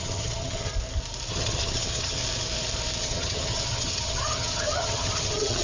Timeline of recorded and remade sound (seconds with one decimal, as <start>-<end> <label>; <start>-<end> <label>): 0.0-0.7 remade; 0.7-1.3 recorded; 1.3-2.2 remade; 2.2-3.0 recorded; 3.0-5.6 remade